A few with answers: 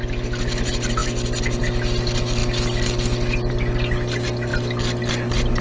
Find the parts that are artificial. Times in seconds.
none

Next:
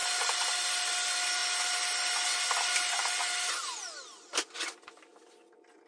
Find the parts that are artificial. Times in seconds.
none

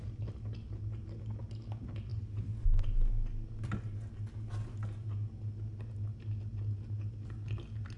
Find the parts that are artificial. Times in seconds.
none

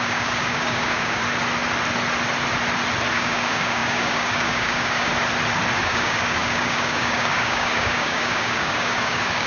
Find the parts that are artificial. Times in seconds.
0.0-1.2 (codec, DAC); 3.1-5.1; 5.8-9.5

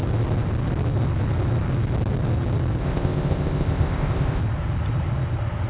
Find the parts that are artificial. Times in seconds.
2.8-4.4 (codec, ZipCodec)

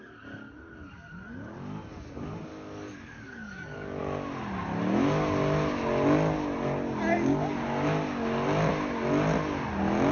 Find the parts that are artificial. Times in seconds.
2.5-4.0 (codec, DAC)

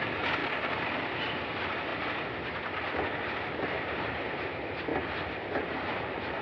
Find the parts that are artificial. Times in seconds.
0.0-0.4 (vocoder, BigVGAN v2); 1.3-1.9; 3.8-4.9; 5.7-6.4

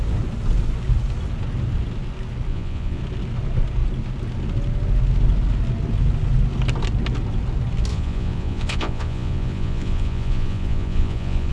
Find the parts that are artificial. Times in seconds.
2.5-3.0 (vocoder, Vocos); 7.9-11.5